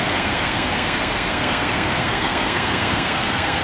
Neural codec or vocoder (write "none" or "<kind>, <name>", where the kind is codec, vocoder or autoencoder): codec, SNAC